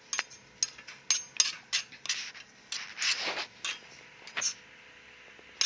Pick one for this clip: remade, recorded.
recorded